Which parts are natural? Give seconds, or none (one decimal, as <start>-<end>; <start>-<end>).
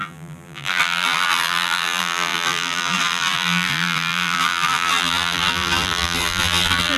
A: none